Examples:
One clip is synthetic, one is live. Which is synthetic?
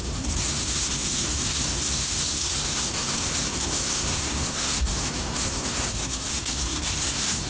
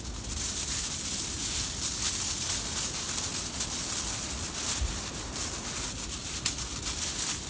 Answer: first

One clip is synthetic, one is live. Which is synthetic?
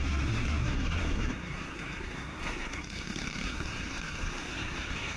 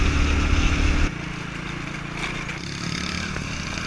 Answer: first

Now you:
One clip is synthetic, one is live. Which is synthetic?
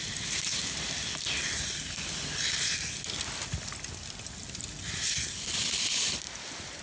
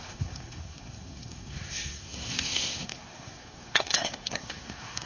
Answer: second